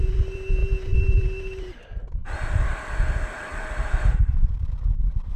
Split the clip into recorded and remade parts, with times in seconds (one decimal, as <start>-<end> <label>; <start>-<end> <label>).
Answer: 0.0-5.4 recorded